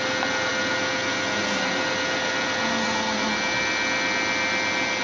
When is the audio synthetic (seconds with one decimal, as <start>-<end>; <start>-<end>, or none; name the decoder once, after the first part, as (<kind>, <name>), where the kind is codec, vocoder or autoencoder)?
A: none